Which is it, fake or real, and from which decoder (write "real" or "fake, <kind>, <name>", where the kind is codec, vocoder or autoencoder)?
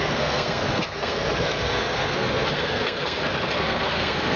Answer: fake, codec, SNAC